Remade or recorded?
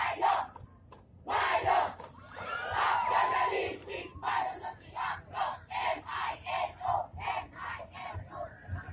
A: remade